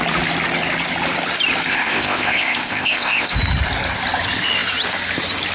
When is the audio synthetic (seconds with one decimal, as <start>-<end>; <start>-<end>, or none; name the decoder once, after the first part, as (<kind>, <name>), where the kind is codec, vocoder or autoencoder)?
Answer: 1.7-3.3 (codec, ZipCodec)

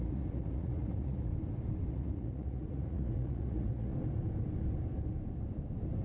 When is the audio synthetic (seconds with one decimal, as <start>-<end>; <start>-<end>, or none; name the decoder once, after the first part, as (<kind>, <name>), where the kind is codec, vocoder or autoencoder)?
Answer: 0.0-1.3 (vocoder, Vocos); 1.9-3.9